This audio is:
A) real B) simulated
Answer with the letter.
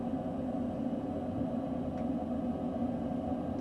A